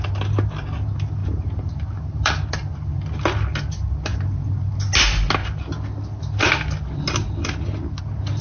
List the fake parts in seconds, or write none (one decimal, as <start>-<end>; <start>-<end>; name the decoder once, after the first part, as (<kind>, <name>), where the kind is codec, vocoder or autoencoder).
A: 1.2-3.0 (vocoder, BigVGAN v2); 4.1-4.9